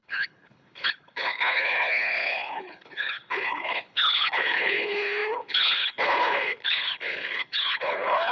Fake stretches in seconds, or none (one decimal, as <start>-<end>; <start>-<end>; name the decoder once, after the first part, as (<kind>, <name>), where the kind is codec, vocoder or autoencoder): 0.0-8.3 (codec, HILCodec)